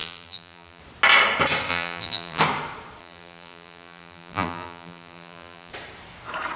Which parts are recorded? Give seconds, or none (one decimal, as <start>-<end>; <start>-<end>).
0.8-1.7; 2.4-3.0; 5.7-6.6